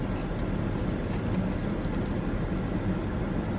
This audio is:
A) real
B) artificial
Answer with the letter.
A